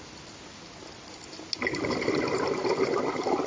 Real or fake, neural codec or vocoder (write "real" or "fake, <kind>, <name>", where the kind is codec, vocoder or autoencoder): real